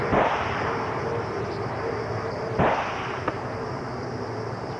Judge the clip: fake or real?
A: fake